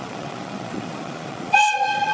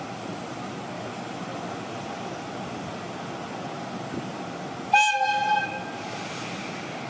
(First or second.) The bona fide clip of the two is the second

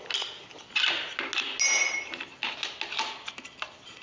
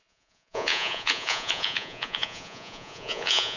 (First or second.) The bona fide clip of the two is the first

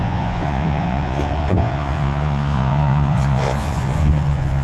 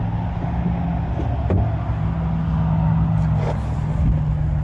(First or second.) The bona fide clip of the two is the second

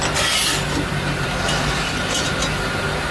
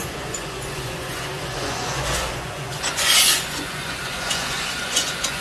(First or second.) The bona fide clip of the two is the first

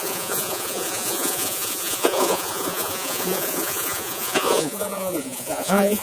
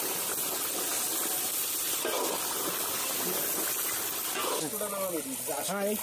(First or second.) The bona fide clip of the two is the second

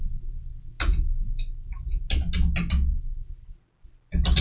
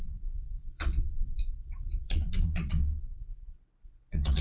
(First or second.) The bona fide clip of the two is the first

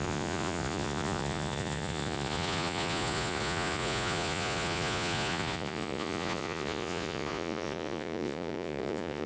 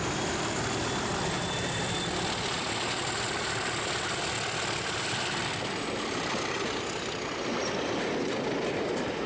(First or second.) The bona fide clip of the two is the second